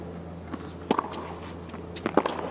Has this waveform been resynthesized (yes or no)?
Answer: no